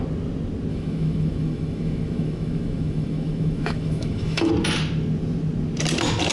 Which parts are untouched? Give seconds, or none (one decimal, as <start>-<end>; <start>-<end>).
0.0-0.7; 4.5-6.3